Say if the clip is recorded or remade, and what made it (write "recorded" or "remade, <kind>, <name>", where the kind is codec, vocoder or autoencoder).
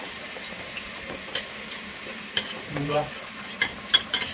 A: remade, vocoder, BigVGAN v2